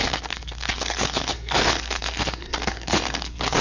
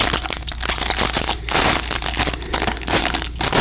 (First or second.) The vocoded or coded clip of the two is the first